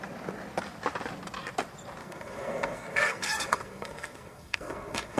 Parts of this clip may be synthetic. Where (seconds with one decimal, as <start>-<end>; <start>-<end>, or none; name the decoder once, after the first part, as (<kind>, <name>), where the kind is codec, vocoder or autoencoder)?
2.0-5.2 (codec, SNAC)